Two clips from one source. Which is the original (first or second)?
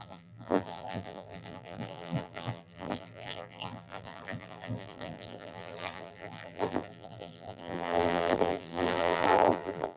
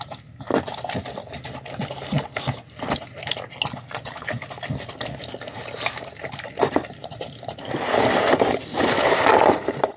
second